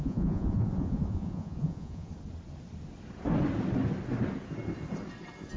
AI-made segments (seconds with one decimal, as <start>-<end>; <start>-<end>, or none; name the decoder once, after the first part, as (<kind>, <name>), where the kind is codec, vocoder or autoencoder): 0.0-2.1 (vocoder, Vocos)